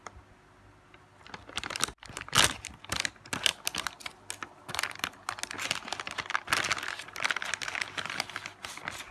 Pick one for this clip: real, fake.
real